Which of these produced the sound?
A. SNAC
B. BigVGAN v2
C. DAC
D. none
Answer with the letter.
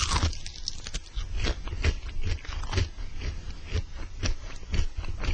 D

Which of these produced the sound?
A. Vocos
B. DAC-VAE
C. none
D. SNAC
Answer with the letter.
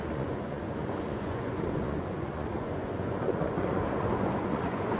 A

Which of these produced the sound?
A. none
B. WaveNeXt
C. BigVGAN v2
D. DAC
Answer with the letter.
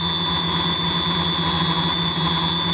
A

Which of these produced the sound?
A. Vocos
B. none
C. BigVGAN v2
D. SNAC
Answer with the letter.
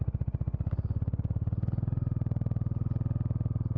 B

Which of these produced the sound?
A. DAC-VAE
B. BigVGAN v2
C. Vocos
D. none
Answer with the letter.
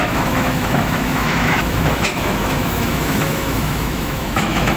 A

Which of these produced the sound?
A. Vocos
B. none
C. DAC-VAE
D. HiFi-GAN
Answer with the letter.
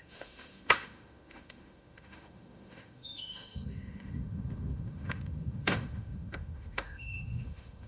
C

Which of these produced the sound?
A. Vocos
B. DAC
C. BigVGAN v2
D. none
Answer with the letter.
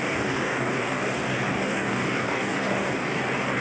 B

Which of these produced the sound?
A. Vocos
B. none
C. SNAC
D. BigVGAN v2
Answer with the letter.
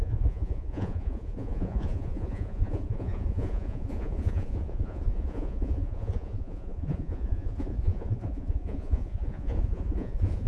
A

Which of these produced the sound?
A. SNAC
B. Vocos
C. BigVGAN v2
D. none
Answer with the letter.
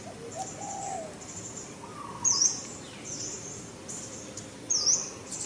D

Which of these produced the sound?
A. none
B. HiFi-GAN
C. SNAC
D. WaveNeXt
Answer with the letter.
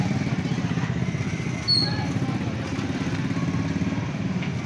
A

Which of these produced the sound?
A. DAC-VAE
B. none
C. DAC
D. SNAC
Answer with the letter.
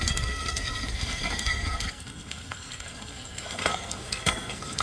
D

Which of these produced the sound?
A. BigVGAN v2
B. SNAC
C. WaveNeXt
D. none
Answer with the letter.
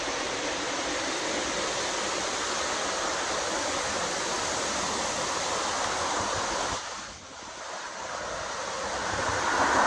D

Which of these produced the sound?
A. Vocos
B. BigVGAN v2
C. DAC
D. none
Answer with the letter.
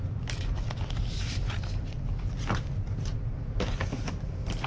D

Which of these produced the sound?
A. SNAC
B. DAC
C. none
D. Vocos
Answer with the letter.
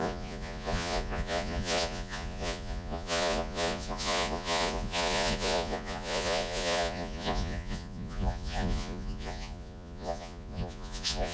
D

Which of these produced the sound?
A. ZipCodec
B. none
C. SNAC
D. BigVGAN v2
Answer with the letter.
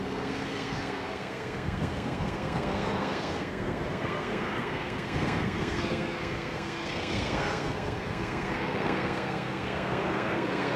C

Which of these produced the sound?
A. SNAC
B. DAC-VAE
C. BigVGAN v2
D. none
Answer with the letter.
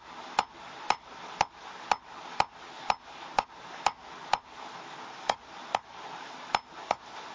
D